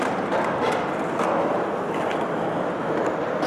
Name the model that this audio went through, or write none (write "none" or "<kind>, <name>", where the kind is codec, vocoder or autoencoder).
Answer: none